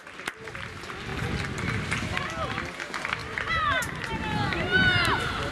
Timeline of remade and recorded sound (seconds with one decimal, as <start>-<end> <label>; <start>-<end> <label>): 0.0-5.5 recorded